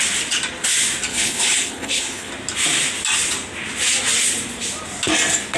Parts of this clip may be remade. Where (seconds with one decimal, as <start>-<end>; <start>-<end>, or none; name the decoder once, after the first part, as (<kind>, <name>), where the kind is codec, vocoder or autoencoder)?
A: 1.1-2.3 (codec, HILCodec)